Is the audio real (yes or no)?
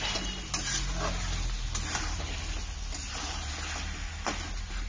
yes